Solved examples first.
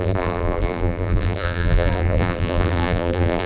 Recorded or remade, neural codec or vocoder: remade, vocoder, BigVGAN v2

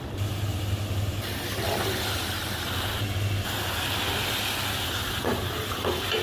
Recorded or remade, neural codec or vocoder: recorded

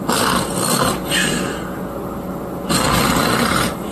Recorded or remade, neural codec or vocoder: recorded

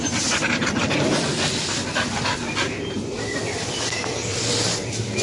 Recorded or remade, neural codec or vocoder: recorded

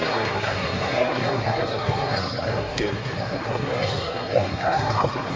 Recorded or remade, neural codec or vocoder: remade, codec, SNAC